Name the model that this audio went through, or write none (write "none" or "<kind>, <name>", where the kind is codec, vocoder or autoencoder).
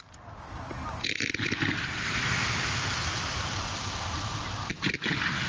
vocoder, BigVGAN v2